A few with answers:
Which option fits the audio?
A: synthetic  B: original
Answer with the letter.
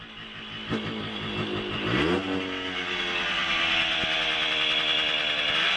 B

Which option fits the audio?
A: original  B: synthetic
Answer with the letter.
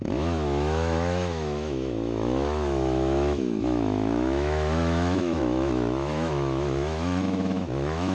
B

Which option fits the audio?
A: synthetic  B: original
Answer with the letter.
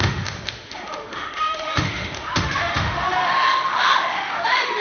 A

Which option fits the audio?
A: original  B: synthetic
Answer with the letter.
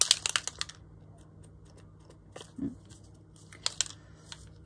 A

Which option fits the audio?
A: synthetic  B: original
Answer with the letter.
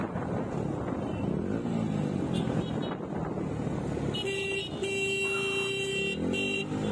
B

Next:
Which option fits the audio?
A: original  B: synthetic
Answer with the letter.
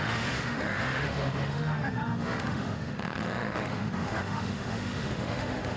B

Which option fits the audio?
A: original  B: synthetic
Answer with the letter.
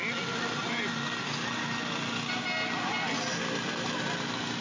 A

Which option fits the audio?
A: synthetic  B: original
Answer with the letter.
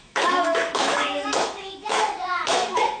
A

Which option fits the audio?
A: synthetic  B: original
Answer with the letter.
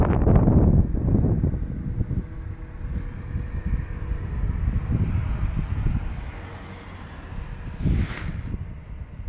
B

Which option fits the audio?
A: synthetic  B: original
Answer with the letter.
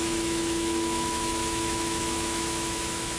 A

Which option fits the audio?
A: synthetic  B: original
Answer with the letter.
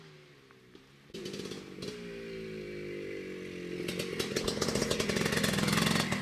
B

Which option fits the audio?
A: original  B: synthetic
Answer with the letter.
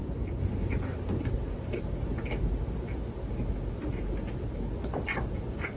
A